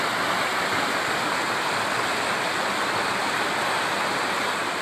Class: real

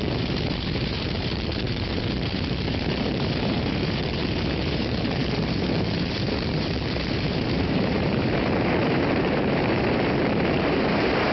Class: fake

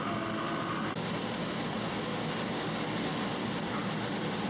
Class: real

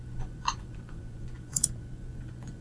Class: fake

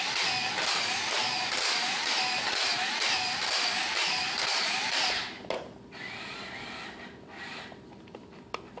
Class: real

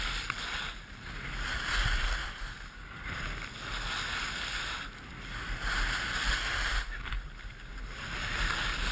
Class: real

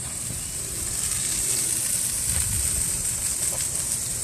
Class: fake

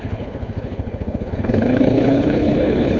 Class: fake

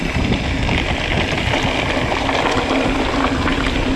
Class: real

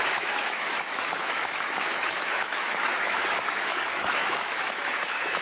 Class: fake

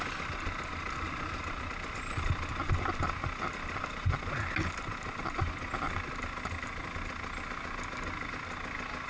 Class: real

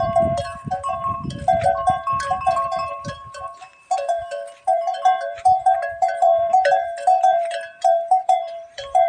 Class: fake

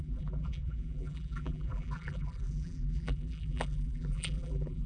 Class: fake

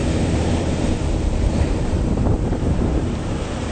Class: fake